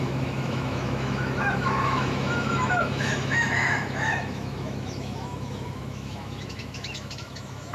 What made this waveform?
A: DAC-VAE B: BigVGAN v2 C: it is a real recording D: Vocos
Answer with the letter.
A